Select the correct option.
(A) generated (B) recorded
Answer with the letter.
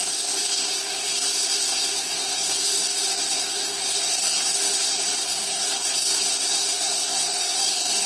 A